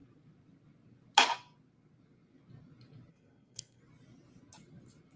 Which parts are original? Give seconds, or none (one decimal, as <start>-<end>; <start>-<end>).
0.0-3.1; 3.8-5.2